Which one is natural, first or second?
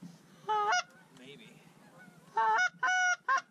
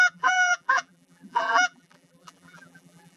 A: first